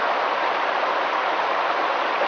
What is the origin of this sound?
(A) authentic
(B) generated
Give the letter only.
A